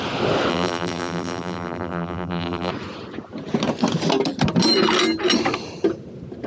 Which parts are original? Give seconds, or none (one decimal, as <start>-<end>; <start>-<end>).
0.0-0.5; 2.7-6.5